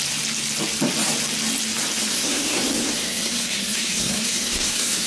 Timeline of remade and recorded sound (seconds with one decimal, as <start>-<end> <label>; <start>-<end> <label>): 0.0-2.1 recorded; 2.1-5.1 remade